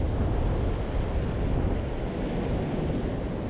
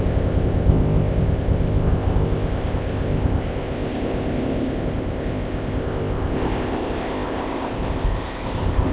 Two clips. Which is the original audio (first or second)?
first